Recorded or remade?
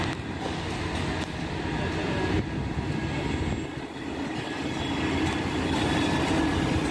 recorded